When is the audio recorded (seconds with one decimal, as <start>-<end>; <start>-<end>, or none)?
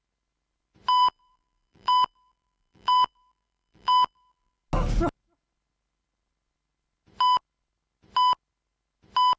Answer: 0.0-1.0; 4.6-9.4